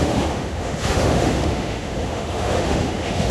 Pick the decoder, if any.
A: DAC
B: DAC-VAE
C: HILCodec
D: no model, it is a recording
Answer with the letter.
B